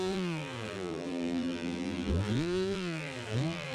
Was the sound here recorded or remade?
remade